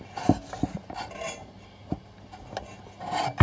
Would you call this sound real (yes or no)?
yes